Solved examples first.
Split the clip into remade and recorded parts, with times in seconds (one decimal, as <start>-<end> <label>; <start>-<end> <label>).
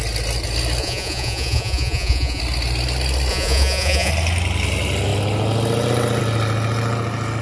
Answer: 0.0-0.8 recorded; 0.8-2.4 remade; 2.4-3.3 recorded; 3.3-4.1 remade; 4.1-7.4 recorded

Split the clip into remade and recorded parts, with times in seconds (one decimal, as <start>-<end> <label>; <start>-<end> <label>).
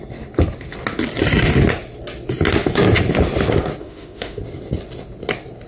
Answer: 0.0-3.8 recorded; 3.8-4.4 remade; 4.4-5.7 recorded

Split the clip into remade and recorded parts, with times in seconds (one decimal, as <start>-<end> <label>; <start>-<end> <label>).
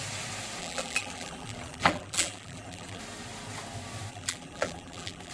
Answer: 0.0-0.6 recorded; 0.6-3.0 remade; 3.0-4.1 recorded; 4.1-5.3 remade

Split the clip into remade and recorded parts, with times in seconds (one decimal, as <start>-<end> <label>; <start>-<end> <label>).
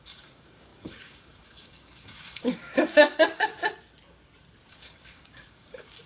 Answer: 0.0-3.5 remade; 3.5-4.7 recorded; 4.7-6.1 remade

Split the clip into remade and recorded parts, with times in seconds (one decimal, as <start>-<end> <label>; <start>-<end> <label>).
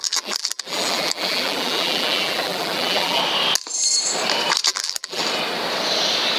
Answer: 0.0-3.2 remade; 3.2-4.7 recorded; 4.7-5.2 remade; 5.2-6.4 recorded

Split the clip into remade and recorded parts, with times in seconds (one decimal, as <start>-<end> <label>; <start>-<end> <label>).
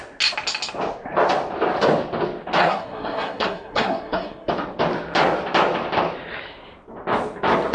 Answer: 0.0-2.6 recorded; 2.6-4.5 remade; 4.5-7.7 recorded